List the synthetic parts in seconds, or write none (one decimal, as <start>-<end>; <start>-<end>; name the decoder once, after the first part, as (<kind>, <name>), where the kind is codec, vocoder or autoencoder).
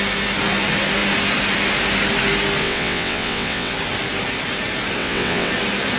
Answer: 2.6-3.7 (vocoder, WaveNeXt); 5.0-5.5